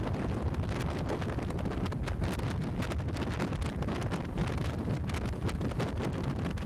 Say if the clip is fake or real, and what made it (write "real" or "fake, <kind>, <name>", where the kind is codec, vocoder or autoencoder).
real